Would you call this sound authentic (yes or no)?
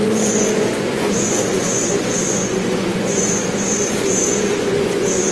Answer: no